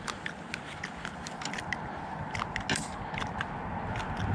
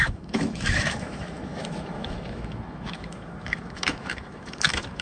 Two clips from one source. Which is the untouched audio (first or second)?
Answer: first